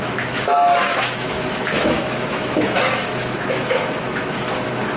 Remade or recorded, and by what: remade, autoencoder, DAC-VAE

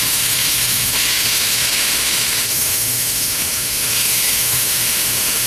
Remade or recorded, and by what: remade, autoencoder, DAC-VAE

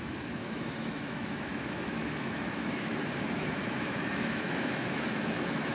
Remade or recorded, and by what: remade, autoencoder, DAC-VAE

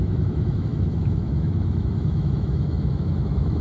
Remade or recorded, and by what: remade, autoencoder, DAC-VAE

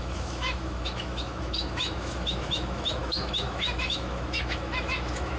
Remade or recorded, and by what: remade, autoencoder, DAC-VAE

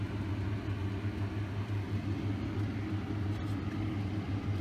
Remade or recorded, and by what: recorded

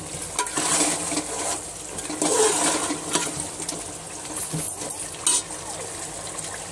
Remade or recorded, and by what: recorded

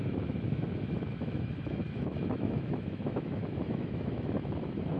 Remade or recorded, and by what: remade, autoencoder, DAC-VAE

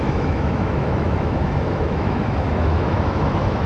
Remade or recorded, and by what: remade, autoencoder, DAC-VAE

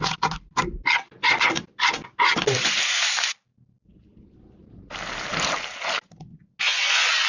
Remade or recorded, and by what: recorded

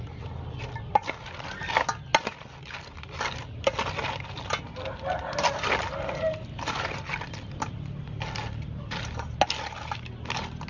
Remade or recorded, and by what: recorded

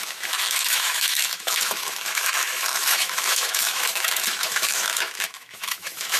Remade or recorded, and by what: remade, autoencoder, DAC-VAE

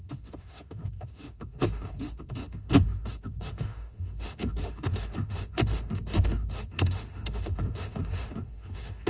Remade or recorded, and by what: remade, autoencoder, DAC-VAE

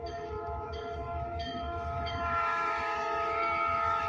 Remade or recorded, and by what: remade, autoencoder, DAC-VAE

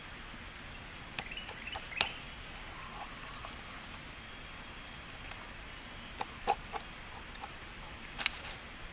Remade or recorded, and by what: recorded